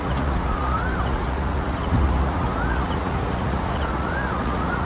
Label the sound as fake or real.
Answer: fake